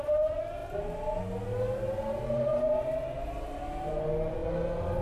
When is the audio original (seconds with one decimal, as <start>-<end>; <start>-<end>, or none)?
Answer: 0.0-5.0